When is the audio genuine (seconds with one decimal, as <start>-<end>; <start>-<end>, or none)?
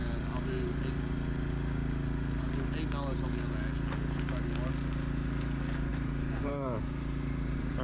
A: 0.0-5.9